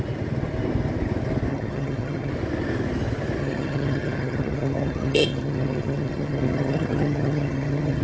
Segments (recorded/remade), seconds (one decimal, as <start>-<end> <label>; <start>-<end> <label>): 0.0-1.5 recorded; 1.5-2.3 remade; 2.3-3.4 recorded; 3.4-8.0 remade